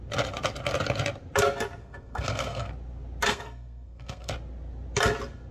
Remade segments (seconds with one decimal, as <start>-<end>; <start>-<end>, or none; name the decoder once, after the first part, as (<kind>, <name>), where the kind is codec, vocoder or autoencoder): 1.8-2.7 (codec, SNAC); 3.3-4.3